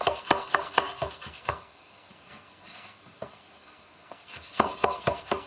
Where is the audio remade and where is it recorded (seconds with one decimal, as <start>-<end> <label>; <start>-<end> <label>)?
0.0-5.5 remade